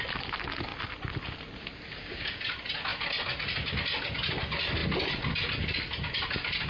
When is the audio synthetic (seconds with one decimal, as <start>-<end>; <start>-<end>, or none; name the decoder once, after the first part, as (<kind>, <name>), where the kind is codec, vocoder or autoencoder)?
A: none